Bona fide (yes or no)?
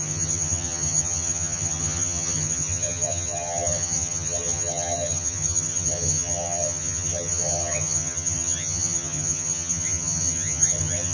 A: no